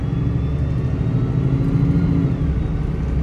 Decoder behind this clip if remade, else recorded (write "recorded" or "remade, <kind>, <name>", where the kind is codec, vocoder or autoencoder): recorded